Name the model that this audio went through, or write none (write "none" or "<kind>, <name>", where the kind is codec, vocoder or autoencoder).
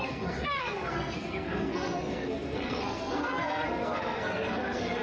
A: codec, SNAC